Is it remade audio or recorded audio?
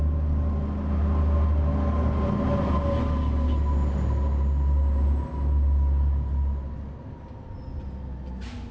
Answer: recorded